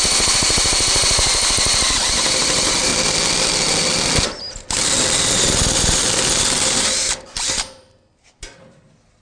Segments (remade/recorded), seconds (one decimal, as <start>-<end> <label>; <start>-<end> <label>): 0.0-2.9 remade; 2.9-5.6 recorded; 5.6-9.2 remade